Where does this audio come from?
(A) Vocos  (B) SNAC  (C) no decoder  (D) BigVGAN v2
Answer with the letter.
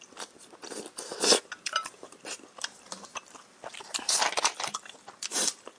D